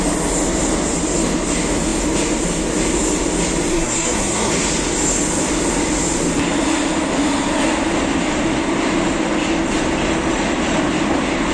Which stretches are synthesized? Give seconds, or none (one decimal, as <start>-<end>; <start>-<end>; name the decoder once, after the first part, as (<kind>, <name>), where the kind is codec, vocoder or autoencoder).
3.7-4.5 (codec, SNAC)